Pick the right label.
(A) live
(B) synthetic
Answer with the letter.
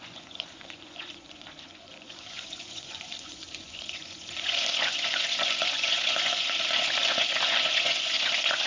B